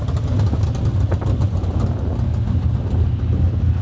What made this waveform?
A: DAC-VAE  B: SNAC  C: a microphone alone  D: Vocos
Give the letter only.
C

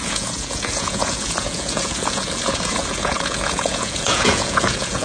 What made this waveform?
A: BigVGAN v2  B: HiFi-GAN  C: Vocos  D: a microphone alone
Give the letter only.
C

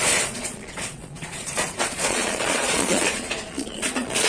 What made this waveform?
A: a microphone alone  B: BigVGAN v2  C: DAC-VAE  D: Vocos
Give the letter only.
D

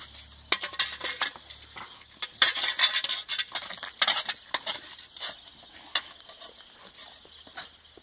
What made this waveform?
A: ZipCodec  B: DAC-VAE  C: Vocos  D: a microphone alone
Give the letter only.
D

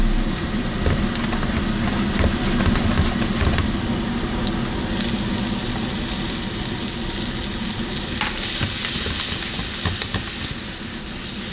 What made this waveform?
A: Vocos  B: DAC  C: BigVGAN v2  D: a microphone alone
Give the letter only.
D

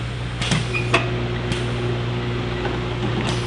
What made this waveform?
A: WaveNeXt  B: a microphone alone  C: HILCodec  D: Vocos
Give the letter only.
B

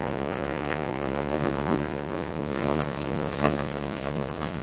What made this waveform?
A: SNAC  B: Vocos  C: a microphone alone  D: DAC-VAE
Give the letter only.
B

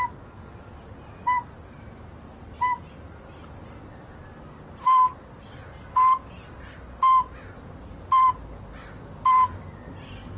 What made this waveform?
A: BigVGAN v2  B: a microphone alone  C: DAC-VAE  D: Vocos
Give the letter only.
B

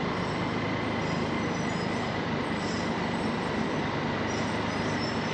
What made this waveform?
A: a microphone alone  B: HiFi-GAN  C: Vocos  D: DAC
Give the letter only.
A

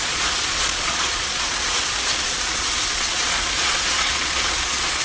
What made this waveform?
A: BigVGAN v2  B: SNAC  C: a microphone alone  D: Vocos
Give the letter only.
D